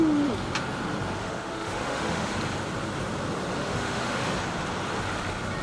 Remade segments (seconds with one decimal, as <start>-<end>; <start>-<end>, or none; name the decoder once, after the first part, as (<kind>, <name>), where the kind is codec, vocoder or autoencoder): 1.2-2.3 (autoencoder, DAC-VAE); 3.6-4.3